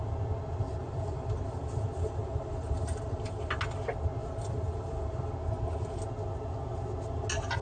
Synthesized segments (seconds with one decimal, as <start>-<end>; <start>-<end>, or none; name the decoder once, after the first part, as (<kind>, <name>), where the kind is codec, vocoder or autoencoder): 0.8-3.6 (vocoder, BigVGAN v2); 4.2-5.3